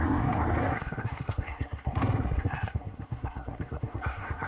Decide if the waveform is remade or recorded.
remade